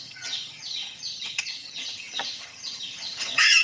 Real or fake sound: fake